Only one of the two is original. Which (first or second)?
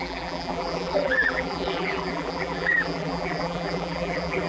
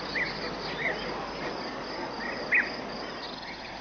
second